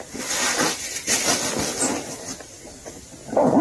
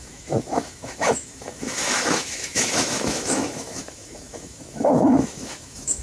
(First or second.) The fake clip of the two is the second